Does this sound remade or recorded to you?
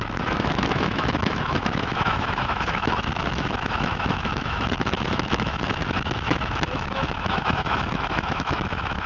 remade